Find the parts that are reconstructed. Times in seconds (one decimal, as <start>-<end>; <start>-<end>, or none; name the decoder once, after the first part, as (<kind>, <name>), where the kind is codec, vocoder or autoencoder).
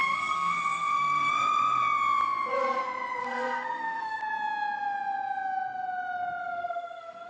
0.0-1.3 (codec, SNAC); 3.2-4.2; 6.4-7.3